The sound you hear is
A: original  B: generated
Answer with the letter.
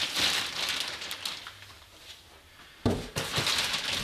A